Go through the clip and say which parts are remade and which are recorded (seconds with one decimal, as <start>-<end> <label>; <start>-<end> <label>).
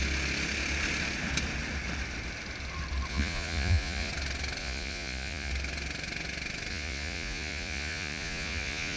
0.0-3.1 recorded; 3.1-4.1 remade; 4.1-4.6 recorded; 4.6-5.5 remade; 5.5-6.7 recorded; 6.7-9.0 remade